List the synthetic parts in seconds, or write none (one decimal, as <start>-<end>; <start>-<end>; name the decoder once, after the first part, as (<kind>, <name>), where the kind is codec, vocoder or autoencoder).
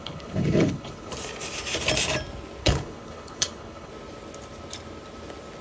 0.0-1.1 (codec, HILCodec); 2.6-3.9